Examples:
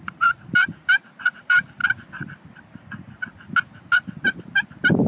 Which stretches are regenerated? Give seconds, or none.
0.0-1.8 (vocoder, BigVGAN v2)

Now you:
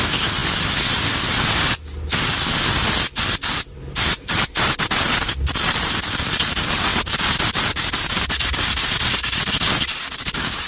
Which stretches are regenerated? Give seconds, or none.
0.0-0.4 (vocoder, BigVGAN v2); 3.9-10.7

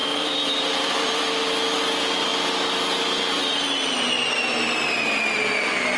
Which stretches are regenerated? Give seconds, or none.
0.0-1.2 (vocoder, BigVGAN v2); 4.5-6.0

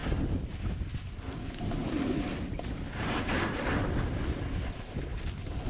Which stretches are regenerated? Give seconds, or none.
none

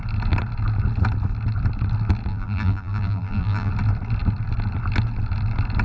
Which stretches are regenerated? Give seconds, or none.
2.3-3.7 (vocoder, BigVGAN v2)

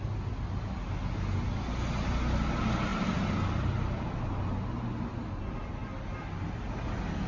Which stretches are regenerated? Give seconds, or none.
2.9-4.2 (vocoder, BigVGAN v2)